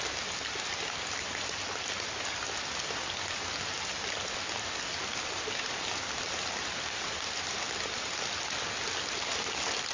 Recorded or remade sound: recorded